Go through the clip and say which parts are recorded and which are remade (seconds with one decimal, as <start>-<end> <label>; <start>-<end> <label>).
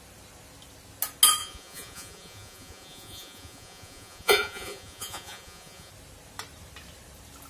0.0-1.4 recorded; 1.4-5.9 remade; 5.9-7.5 recorded